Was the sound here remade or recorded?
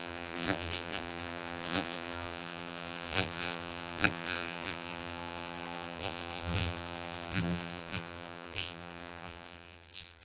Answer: remade